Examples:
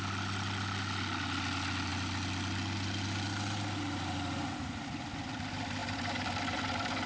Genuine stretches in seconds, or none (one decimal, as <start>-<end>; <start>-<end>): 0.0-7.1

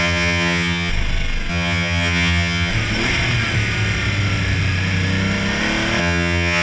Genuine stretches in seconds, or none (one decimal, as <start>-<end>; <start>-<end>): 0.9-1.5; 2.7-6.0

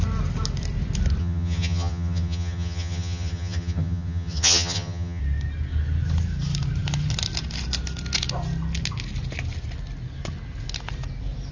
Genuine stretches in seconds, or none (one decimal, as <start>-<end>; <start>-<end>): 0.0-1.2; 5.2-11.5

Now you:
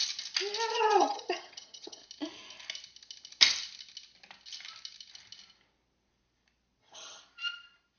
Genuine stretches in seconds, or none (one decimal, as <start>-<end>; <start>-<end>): 0.0-0.7; 2.0-6.8; 7.2-8.0

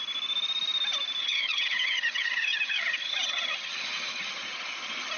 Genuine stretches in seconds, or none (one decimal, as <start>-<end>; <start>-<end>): 0.0-1.2; 4.3-5.2